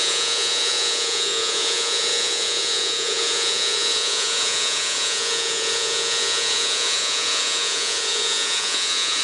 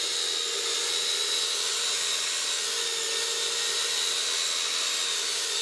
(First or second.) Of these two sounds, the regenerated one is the first